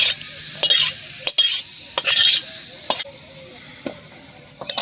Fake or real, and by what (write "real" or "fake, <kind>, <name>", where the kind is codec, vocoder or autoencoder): real